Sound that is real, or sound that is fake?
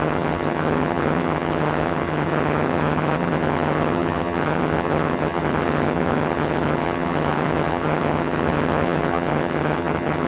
fake